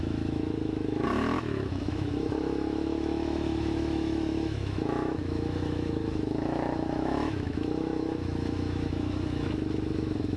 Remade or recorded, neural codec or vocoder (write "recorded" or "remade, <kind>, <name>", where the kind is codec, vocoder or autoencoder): remade, autoencoder, DAC-VAE